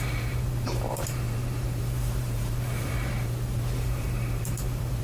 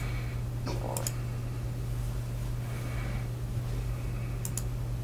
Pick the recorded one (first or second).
second